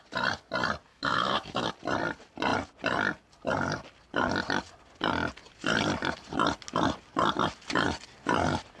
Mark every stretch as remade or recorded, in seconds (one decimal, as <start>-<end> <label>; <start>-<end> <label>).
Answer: 0.0-0.9 recorded; 0.9-1.7 remade; 1.7-8.8 recorded